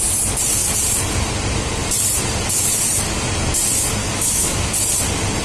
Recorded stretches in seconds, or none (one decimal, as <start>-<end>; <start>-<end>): 0.0-4.0; 4.7-5.4

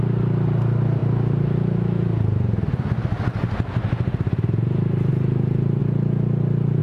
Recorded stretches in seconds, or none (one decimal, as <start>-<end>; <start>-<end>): 0.0-6.8

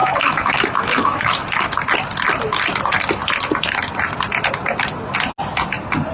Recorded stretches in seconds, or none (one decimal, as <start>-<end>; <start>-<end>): 1.3-6.1

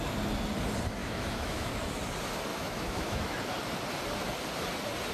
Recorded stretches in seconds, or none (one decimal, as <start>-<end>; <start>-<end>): 0.0-1.0; 1.7-2.5; 3.4-5.1